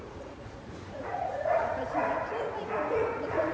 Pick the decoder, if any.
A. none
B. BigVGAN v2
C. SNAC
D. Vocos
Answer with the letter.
D